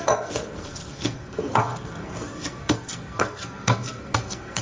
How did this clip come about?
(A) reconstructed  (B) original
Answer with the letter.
A